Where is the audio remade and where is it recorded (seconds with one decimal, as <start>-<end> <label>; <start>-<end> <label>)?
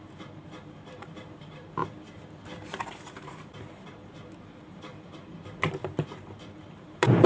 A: 0.0-1.8 remade; 1.8-2.8 recorded; 2.8-7.3 remade